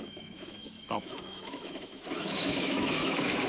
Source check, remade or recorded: remade